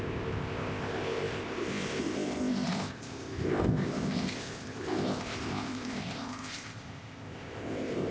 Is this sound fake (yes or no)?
yes